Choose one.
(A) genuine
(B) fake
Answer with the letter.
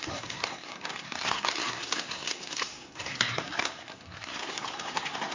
B